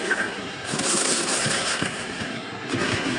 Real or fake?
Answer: fake